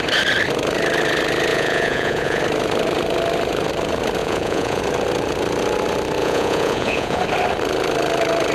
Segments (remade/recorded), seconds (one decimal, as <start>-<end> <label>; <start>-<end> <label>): 0.0-1.5 recorded; 1.5-2.4 remade; 2.4-4.2 recorded; 4.2-4.8 remade; 4.8-6.2 recorded; 6.2-7.2 remade; 7.2-8.5 recorded